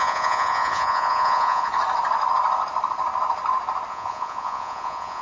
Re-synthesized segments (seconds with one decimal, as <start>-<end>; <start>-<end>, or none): 0.0-1.7; 3.9-5.2